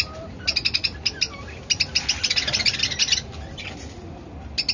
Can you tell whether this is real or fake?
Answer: real